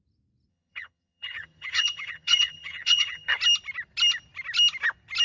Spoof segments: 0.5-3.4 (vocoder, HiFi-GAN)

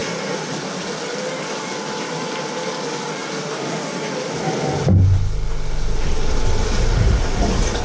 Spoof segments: 0.0-0.6 (vocoder, Vocos); 6.6-7.8

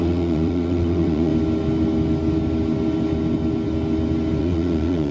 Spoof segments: 0.0-1.3 (vocoder, Vocos); 4.4-5.1

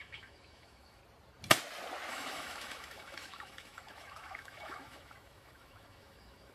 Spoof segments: 0.0-1.0 (autoencoder, DAC-VAE); 2.1-6.5